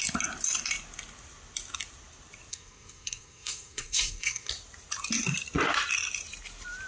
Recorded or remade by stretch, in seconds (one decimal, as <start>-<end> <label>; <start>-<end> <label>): 0.0-2.5 recorded; 2.5-4.5 remade; 4.5-6.9 recorded